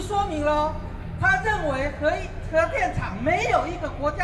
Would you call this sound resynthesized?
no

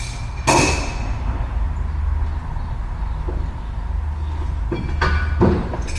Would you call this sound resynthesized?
no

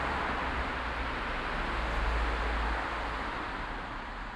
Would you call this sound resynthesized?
no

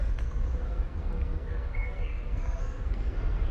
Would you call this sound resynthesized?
yes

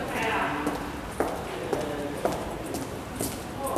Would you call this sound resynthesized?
no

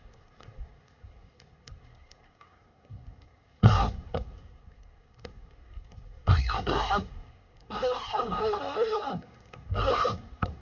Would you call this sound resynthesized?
yes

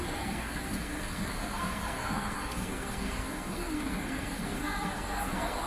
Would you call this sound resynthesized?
yes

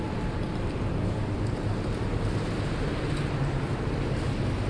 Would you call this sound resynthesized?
no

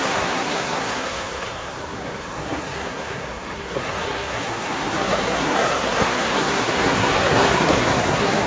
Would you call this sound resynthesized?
yes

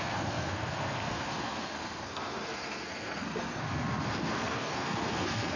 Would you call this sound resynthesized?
yes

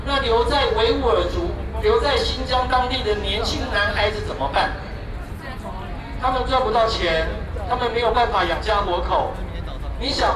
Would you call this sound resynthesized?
no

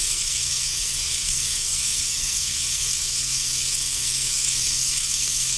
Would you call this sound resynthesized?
yes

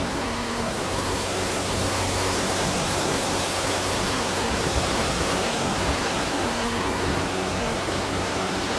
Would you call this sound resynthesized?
yes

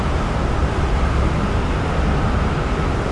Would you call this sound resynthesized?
no